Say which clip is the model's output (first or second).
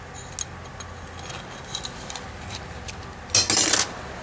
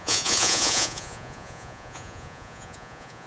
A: second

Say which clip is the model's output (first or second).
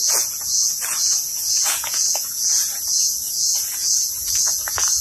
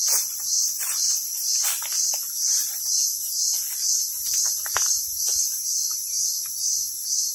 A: first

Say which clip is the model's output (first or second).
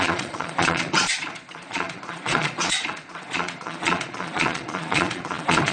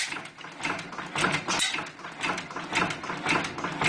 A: first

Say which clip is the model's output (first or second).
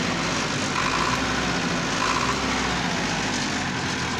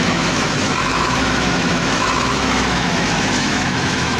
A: second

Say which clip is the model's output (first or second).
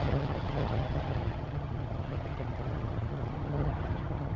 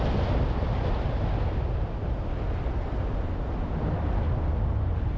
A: first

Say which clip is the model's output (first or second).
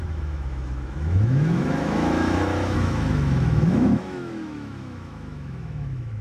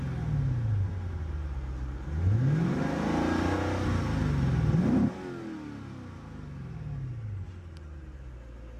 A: first